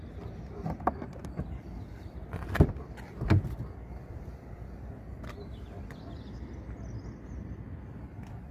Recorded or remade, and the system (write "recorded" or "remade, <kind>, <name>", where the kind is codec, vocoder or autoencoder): recorded